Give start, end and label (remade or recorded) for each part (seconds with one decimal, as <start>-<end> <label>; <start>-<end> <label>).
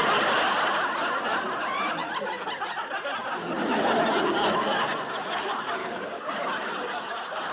0.0-5.8 recorded; 5.8-6.3 remade; 6.3-7.5 recorded